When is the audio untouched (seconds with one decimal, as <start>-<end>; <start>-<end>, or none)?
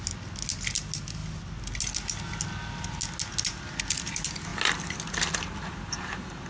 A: 0.0-6.5